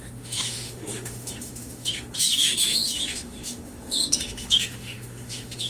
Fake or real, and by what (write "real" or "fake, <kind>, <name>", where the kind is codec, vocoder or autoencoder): fake, autoencoder, DAC-VAE